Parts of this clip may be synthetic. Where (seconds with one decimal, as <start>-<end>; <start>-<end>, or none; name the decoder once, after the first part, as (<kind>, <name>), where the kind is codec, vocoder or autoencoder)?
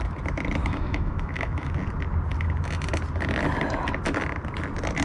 0.6-1.7 (autoencoder, DAC-VAE)